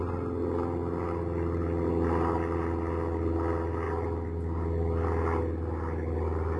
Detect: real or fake real